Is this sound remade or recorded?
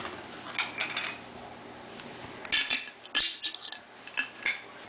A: recorded